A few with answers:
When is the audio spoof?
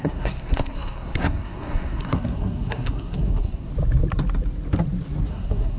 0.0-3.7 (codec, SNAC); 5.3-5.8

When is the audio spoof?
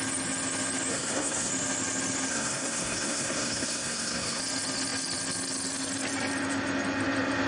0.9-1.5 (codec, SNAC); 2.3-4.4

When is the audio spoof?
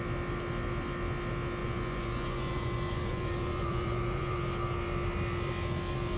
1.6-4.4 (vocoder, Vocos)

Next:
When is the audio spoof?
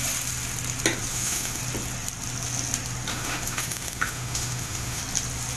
1.1-1.6 (autoencoder, DAC-VAE); 3.1-5.0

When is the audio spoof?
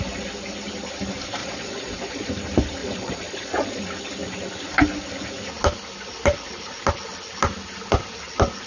1.4-2.3 (vocoder, Vocos); 2.8-3.8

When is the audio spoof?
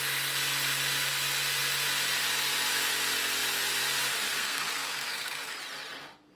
4.4-5.6 (codec, SNAC)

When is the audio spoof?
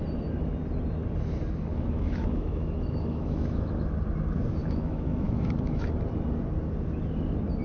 1.7-3.8 (autoencoder, DAC-VAE); 4.6-5.9